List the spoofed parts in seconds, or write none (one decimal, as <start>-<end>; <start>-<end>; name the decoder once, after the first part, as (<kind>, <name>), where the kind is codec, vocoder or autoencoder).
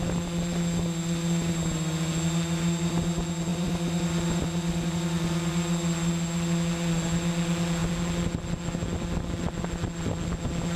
3.5-5.5 (vocoder, BigVGAN v2)